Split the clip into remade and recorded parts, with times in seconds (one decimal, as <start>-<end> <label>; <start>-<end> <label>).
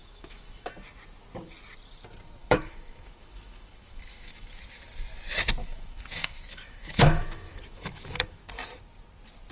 0.0-0.7 remade; 0.7-2.4 recorded; 2.4-4.6 remade; 4.6-5.6 recorded; 5.6-8.4 remade; 8.4-9.5 recorded